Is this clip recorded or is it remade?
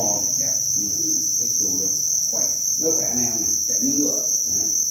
recorded